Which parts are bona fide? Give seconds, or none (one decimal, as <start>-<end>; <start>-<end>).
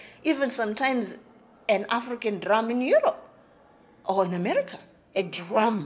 0.0-4.8